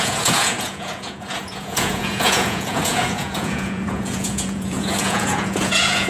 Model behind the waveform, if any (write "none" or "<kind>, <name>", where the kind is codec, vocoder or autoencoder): vocoder, Vocos